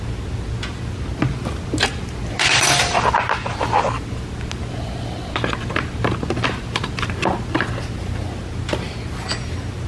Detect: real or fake real